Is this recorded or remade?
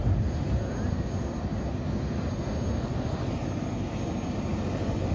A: recorded